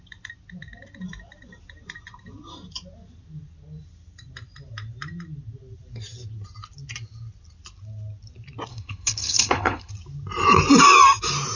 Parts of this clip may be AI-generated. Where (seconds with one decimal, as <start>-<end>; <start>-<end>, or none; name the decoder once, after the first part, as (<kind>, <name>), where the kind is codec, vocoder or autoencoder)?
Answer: 8.7-9.9 (codec, HILCodec)